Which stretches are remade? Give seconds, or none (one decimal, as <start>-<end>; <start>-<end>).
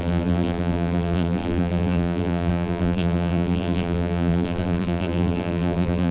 0.0-6.1